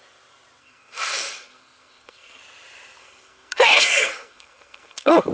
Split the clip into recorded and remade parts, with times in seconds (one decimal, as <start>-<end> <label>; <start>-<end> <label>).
0.0-0.6 recorded; 0.6-2.4 remade; 2.4-3.0 recorded; 3.0-5.3 remade